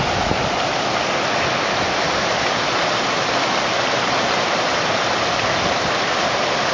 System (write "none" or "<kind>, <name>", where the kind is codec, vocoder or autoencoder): none